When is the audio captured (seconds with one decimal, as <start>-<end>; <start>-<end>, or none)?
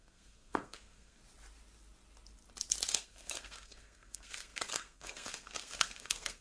1.2-2.9